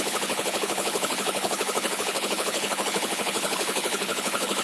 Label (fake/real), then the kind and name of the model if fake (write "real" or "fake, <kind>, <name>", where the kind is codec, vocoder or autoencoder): fake, codec, HILCodec